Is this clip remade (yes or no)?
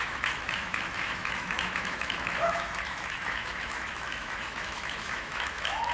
yes